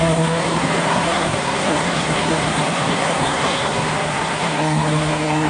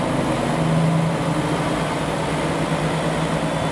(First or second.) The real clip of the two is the second